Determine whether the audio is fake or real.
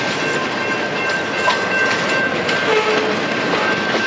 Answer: real